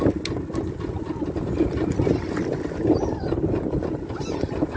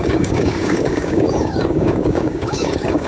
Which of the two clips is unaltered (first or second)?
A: first